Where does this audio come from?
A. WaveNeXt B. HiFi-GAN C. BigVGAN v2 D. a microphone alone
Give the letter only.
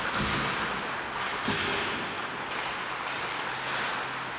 D